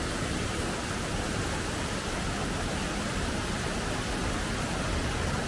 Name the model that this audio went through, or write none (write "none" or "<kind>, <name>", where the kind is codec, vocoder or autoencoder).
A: none